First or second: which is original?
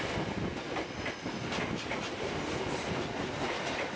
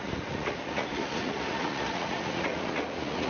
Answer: first